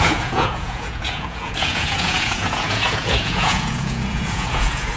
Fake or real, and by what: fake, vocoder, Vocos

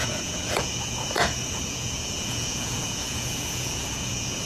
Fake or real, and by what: fake, vocoder, Vocos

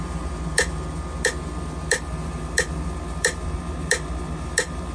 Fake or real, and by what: real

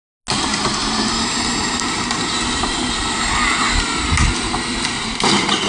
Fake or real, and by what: real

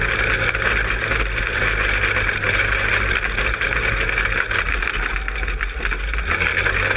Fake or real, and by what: real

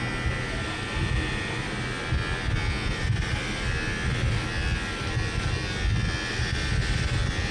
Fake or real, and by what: real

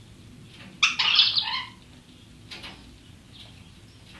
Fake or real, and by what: real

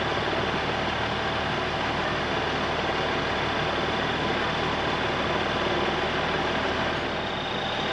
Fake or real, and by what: real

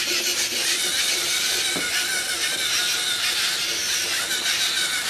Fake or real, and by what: real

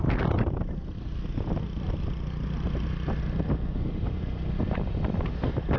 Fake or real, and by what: real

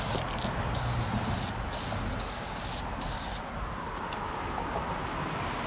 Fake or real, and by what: real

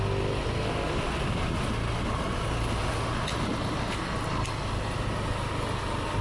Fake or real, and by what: real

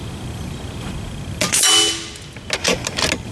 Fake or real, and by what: real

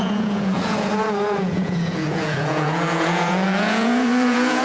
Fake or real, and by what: fake, vocoder, Vocos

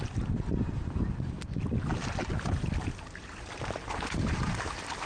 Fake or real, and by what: real